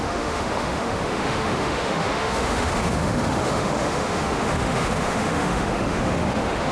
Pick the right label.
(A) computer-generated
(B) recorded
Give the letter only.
A